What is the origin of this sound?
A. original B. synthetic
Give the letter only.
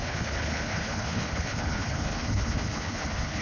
B